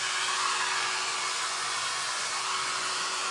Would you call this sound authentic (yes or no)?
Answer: no